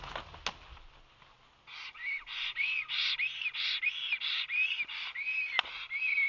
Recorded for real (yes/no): yes